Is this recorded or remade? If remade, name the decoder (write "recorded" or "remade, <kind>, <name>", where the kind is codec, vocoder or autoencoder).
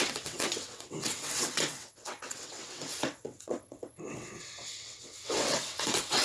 remade, vocoder, WaveNeXt